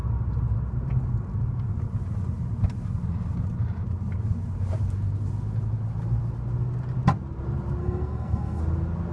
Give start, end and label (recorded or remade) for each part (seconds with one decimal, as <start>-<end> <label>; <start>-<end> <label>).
0.0-7.8 recorded; 7.8-8.6 remade; 8.6-9.1 recorded